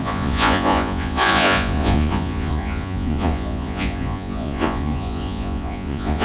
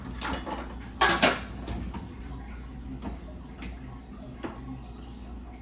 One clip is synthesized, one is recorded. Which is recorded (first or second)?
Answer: second